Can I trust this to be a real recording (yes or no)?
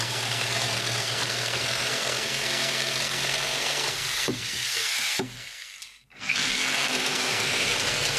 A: no